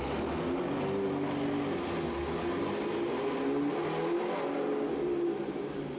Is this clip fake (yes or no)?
no